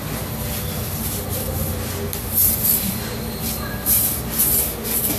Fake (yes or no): no